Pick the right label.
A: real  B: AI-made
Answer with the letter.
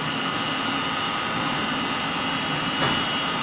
A